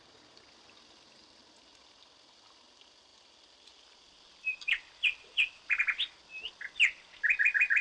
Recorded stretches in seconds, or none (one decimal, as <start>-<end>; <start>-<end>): 0.0-3.1; 6.1-7.8